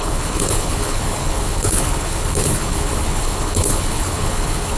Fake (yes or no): yes